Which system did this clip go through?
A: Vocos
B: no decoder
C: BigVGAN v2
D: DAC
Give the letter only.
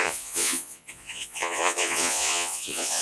A